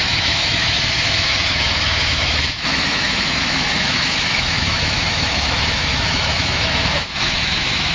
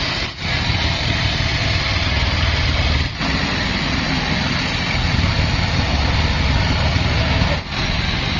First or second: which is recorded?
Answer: second